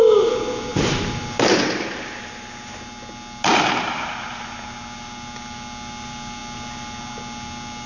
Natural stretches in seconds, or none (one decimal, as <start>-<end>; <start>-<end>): 0.0-7.9